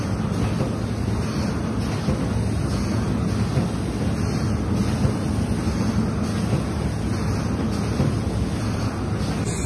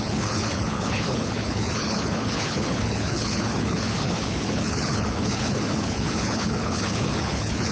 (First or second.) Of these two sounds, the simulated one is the second